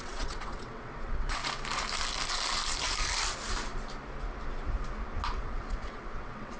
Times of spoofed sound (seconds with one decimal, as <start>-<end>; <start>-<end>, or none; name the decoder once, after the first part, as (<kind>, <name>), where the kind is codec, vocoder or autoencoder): 0.0-1.4 (vocoder, WaveNeXt); 5.4-6.6